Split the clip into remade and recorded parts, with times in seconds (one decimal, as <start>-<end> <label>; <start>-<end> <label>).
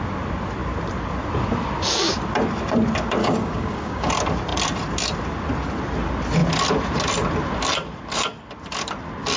0.0-3.2 recorded; 3.2-4.1 remade; 4.1-9.4 recorded